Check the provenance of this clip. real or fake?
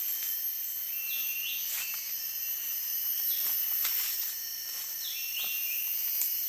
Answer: real